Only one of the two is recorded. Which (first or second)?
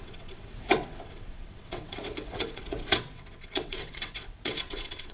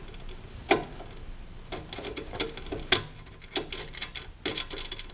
second